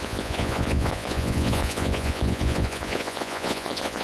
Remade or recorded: remade